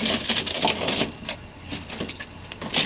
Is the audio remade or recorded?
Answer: recorded